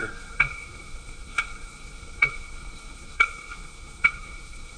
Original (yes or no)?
no